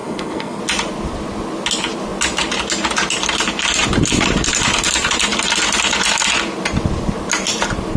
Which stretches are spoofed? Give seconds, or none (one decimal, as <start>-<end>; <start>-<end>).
0.0-0.6